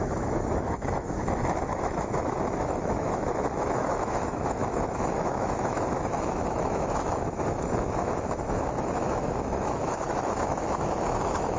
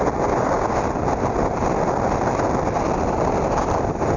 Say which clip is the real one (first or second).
second